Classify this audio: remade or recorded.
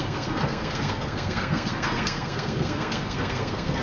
remade